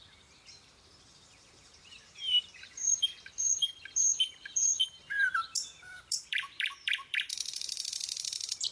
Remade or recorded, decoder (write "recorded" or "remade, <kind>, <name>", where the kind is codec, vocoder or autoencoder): remade, vocoder, BigVGAN v2